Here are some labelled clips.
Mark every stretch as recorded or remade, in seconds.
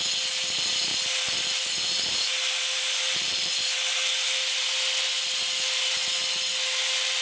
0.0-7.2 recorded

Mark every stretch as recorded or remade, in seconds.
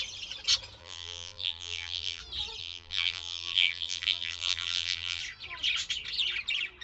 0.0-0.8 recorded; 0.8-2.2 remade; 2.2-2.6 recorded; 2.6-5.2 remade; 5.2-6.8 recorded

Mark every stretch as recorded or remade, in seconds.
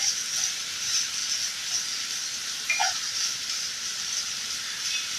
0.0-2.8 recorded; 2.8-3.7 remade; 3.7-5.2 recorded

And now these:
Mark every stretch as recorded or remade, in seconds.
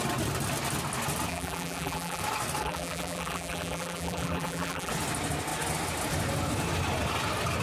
0.0-1.3 recorded; 1.3-2.2 remade; 2.2-2.6 recorded; 2.6-4.9 remade; 4.9-7.6 recorded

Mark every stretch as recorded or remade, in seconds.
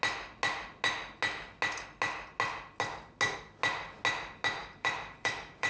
0.0-4.6 recorded; 4.6-5.7 remade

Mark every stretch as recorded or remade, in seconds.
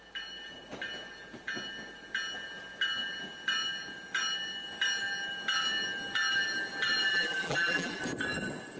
0.0-7.1 recorded; 7.1-8.0 remade; 8.0-8.8 recorded